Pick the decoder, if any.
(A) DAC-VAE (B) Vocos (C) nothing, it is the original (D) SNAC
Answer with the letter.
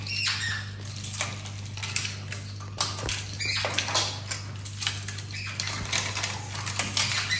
C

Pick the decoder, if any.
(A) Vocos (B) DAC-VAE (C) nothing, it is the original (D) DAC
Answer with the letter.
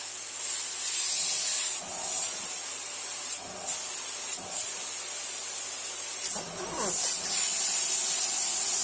C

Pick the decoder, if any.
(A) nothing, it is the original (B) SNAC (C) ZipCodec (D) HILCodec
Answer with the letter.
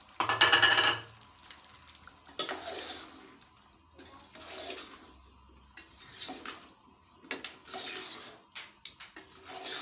A